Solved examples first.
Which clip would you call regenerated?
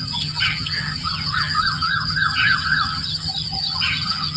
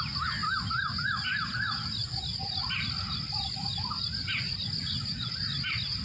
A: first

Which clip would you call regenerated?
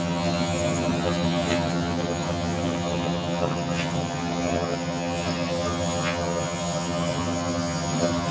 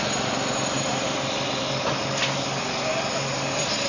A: first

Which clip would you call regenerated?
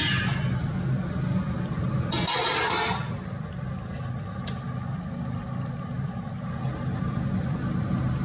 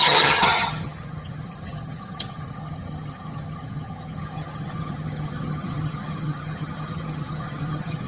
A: second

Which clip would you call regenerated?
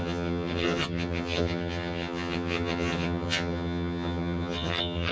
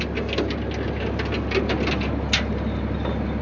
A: first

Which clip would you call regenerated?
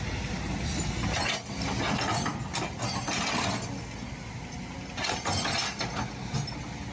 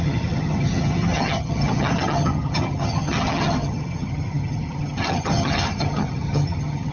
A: second